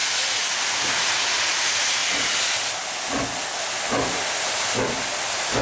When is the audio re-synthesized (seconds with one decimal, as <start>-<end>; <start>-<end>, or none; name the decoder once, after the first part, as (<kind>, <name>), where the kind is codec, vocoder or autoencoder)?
0.7-2.0 (vocoder, Vocos)